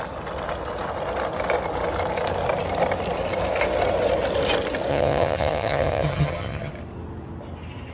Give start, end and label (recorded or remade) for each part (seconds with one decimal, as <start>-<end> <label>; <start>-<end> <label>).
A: 0.0-4.9 recorded; 4.9-6.7 remade; 6.7-7.9 recorded